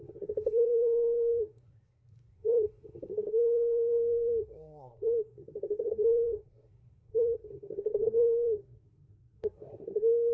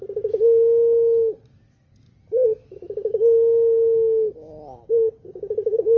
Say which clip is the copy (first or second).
first